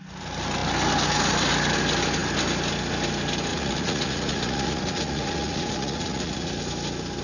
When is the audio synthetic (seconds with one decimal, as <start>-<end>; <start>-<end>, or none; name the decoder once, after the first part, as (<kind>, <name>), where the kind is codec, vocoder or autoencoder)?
3.5-6.5 (vocoder, Vocos)